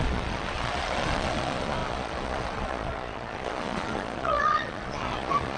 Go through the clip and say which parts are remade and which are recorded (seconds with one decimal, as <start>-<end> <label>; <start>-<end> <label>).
0.0-5.6 remade